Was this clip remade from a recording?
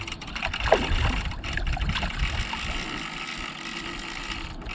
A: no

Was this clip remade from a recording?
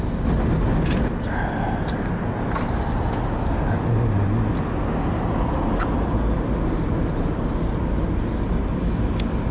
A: no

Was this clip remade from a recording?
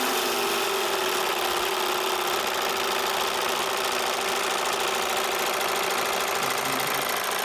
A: no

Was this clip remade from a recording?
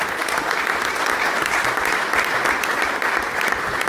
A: no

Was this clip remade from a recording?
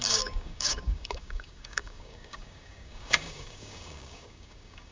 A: yes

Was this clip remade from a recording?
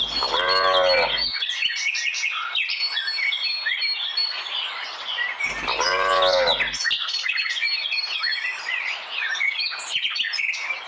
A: no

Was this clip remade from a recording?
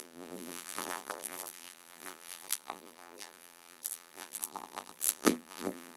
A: yes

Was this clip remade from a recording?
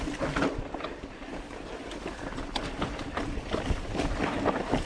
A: yes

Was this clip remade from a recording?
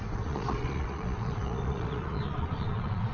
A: yes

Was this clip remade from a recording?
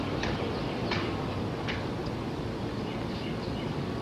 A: no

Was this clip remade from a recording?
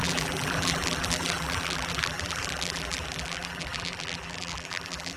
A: yes